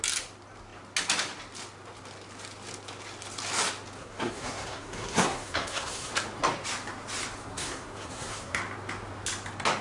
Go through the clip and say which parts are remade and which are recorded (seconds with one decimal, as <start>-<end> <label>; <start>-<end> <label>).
0.0-4.0 recorded; 4.0-6.1 remade; 6.1-7.4 recorded; 7.4-8.6 remade; 8.6-9.8 recorded